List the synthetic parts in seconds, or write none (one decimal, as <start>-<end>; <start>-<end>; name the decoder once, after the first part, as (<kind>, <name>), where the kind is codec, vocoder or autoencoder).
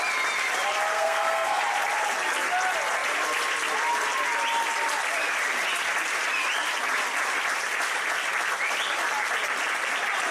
0.9-1.6 (codec, SNAC)